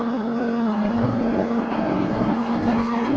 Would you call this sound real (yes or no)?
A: no